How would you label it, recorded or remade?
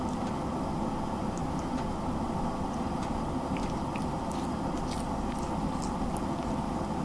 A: recorded